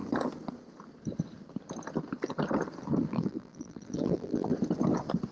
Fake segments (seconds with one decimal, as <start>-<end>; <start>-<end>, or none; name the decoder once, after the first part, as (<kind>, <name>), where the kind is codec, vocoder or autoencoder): 3.1-4.5 (vocoder, BigVGAN v2)